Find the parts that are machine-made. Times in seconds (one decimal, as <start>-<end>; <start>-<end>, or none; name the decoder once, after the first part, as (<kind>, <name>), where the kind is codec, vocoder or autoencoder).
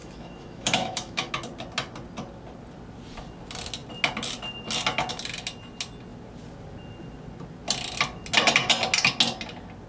0.0-1.3 (autoencoder, DAC-VAE)